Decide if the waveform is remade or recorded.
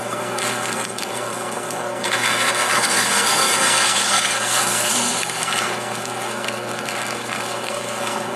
remade